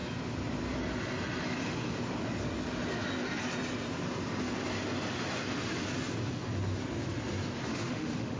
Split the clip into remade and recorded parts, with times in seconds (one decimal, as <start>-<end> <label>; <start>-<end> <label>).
0.0-7.7 recorded; 7.7-8.4 remade